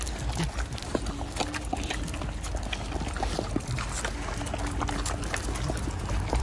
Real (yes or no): yes